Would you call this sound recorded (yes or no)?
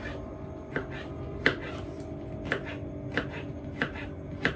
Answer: yes